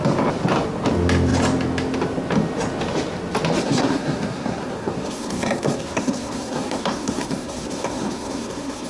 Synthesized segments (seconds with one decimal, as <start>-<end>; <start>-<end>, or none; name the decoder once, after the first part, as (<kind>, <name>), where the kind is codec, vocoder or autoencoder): 3.6-8.9 (codec, SNAC)